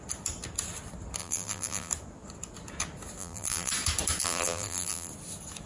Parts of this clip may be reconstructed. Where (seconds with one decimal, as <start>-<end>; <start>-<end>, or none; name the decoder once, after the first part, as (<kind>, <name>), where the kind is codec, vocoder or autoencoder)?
1.2-1.9 (vocoder, BigVGAN v2); 3.2-3.7; 4.2-5.1